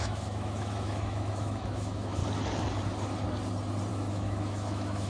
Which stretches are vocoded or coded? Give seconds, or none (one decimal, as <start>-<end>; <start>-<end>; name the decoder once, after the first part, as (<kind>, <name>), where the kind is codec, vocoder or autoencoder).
0.0-2.2 (autoencoder, DAC-VAE); 3.9-5.1